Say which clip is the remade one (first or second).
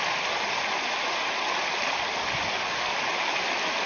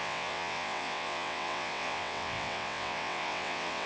second